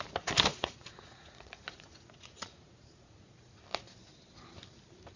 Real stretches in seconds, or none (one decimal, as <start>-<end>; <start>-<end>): 0.0-0.5; 3.6-5.2